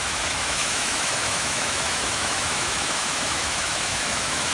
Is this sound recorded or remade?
remade